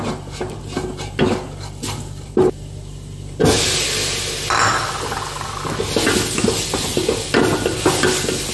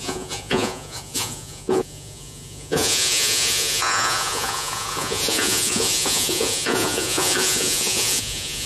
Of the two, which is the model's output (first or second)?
second